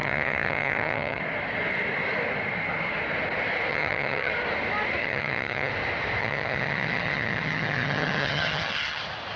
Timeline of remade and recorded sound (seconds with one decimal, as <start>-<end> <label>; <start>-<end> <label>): 0.0-1.2 remade; 1.2-3.7 recorded; 3.7-4.3 remade; 4.3-5.0 recorded; 5.0-5.7 remade; 5.7-6.2 recorded; 6.2-9.0 remade; 9.0-9.4 recorded